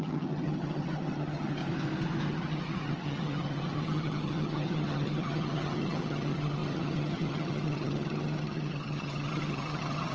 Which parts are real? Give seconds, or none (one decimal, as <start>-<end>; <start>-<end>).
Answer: 1.6-2.3